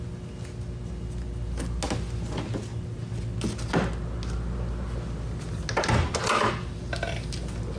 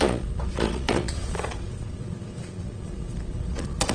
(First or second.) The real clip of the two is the first